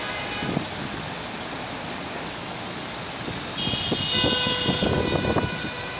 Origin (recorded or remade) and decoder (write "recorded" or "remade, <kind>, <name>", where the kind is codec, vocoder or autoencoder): recorded